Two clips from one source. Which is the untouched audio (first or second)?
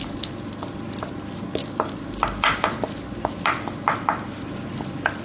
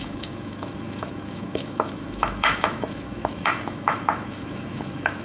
first